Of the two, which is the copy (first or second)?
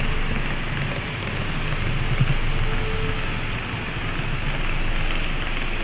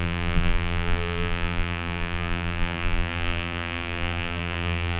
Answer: second